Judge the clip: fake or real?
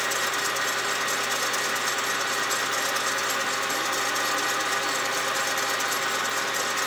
real